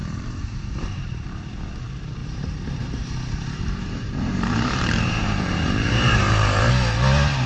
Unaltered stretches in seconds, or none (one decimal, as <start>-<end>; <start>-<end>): 1.4-2.2; 6.7-7.5